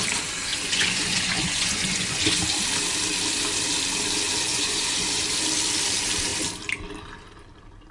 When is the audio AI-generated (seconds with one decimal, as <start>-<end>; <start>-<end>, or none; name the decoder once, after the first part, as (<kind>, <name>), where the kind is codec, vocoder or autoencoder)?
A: 0.5-2.4 (vocoder, Vocos); 4.5-5.2

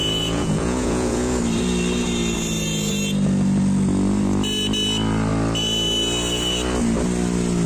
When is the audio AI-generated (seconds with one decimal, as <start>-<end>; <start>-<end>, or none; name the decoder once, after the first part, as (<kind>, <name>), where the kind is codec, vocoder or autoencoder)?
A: 0.0-1.4 (vocoder, Vocos)